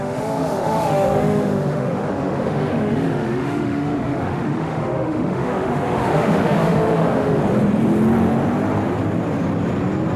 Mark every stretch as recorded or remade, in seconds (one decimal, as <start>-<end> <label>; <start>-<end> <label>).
0.0-7.4 remade; 7.4-10.2 recorded